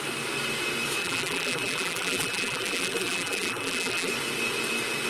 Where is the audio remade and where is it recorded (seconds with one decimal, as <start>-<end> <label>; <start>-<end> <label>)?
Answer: 0.0-1.0 recorded; 1.0-4.1 remade; 4.1-5.1 recorded